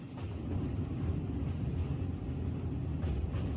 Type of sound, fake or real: real